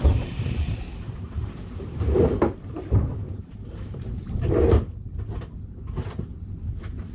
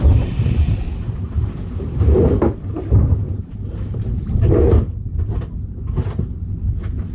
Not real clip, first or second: first